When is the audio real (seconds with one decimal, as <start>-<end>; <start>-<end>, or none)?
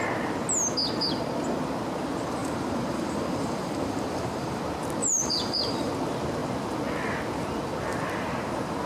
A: 0.0-2.4; 4.6-5.0; 5.9-8.9